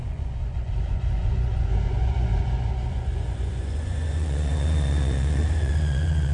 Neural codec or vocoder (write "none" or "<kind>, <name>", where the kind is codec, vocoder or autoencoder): vocoder, Vocos